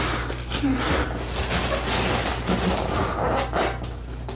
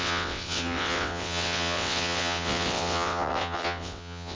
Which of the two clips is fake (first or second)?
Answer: second